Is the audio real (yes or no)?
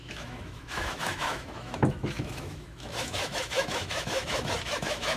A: no